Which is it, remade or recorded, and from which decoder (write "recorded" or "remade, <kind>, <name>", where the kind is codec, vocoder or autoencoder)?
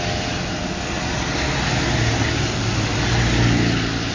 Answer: recorded